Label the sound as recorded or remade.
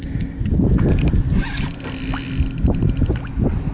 recorded